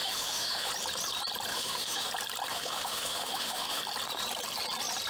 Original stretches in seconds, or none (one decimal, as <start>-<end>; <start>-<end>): 0.7-1.5; 2.1-2.5; 3.8-5.1